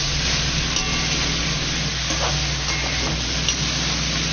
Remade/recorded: recorded